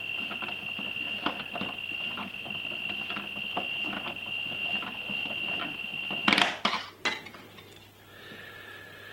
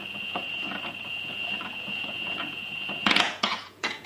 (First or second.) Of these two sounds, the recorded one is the first